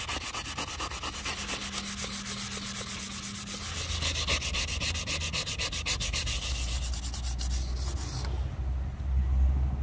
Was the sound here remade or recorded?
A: recorded